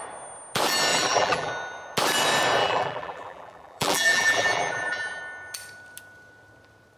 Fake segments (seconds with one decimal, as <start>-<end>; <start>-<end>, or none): 0.9-1.5; 2.6-5.2